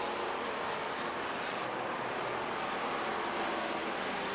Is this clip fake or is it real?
real